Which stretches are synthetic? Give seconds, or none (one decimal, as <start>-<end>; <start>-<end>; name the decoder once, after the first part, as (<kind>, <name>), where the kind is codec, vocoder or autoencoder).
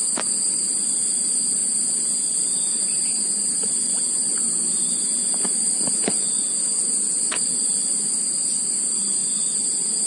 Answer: none